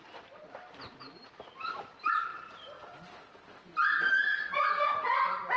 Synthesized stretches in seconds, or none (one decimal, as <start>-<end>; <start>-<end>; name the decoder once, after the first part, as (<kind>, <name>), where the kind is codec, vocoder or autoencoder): none